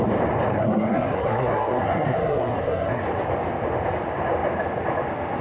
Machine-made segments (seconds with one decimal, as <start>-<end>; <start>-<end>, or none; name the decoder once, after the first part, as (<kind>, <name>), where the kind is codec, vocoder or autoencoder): 0.5-3.0 (codec, SNAC)